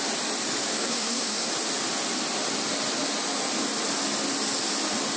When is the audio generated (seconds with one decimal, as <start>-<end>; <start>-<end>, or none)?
0.7-1.5